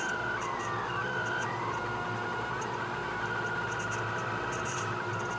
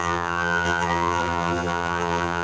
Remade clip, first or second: second